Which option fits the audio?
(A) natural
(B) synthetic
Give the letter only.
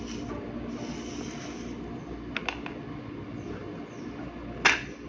A